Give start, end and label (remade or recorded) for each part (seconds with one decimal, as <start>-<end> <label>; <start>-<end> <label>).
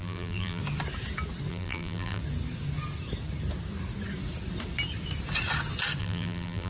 0.0-0.6 remade; 0.6-1.5 recorded; 1.5-2.2 remade; 2.2-6.0 recorded; 6.0-6.7 remade